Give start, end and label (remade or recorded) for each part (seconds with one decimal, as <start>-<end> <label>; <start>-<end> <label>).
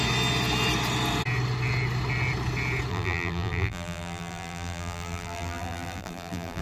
0.0-2.9 recorded; 2.9-6.6 remade